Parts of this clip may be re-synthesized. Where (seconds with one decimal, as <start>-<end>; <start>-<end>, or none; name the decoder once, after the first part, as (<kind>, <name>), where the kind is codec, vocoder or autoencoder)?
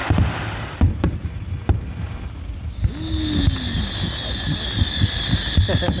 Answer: 0.0-2.9 (vocoder, BigVGAN v2)